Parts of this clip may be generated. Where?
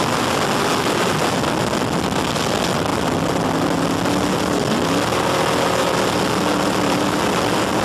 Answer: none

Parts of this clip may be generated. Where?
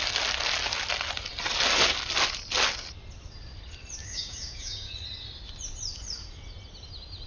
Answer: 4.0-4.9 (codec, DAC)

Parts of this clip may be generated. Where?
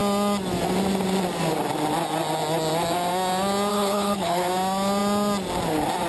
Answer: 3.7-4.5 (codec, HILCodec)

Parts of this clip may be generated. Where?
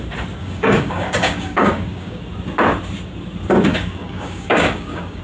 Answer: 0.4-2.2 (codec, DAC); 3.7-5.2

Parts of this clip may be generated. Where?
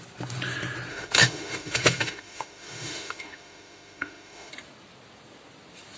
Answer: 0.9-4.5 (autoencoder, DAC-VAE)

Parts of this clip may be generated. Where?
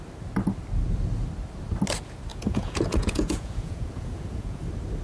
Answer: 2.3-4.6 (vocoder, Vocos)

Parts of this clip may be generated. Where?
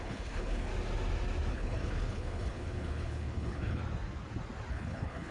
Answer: 0.0-0.7 (codec, HILCodec); 1.5-3.8; 4.7-5.3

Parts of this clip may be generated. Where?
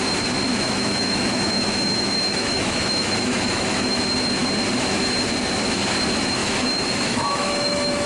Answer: 0.5-4.0 (autoencoder, DAC-VAE); 6.4-8.1